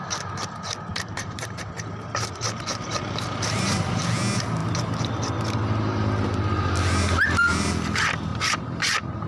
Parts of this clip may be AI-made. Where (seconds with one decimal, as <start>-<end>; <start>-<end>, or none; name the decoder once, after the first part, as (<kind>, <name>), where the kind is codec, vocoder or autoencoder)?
0.9-4.0 (vocoder, BigVGAN v2); 8.3-8.8

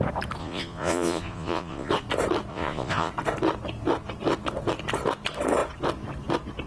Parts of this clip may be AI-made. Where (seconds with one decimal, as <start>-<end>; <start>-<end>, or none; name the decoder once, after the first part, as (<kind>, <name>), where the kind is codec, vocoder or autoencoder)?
0.4-1.9 (vocoder, Vocos); 2.5-3.1

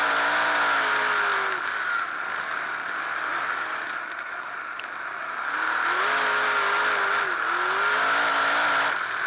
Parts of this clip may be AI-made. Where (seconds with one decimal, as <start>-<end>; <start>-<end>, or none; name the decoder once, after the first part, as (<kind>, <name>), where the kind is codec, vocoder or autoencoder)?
none

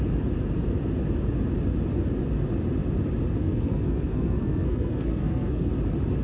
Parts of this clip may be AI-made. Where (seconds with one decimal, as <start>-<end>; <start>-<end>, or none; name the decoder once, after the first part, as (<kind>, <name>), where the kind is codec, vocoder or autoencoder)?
3.4-5.7 (codec, SNAC)

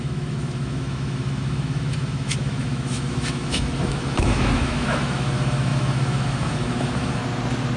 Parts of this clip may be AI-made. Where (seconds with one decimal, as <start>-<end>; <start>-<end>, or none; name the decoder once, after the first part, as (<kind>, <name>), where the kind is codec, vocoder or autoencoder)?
0.0-7.2 (autoencoder, DAC-VAE)

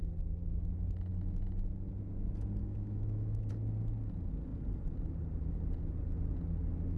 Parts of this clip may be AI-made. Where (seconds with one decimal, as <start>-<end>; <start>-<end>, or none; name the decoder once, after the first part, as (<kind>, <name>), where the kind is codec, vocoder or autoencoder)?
2.6-3.5 (autoencoder, DAC-VAE)

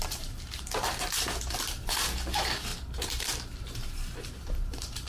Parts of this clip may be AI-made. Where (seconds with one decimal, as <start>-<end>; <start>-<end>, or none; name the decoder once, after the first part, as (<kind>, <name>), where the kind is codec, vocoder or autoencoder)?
0.0-2.7 (vocoder, BigVGAN v2); 3.2-5.1